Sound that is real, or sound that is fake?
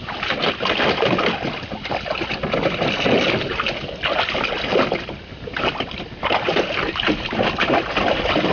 real